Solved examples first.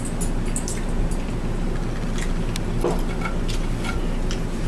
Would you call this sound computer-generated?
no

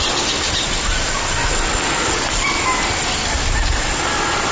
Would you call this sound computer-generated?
no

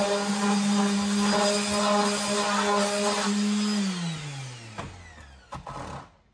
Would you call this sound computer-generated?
no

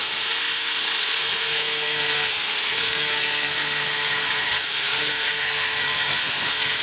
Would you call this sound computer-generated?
yes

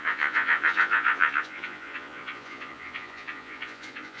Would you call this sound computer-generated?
yes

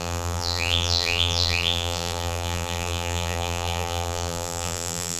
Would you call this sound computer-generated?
yes